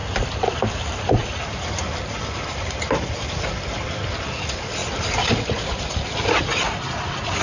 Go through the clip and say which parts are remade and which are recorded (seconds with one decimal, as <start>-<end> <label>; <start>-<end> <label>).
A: 0.0-0.5 remade; 0.5-1.2 recorded; 1.2-3.1 remade; 3.1-4.8 recorded; 4.8-5.3 remade; 5.3-7.4 recorded